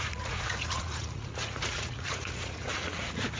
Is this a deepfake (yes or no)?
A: yes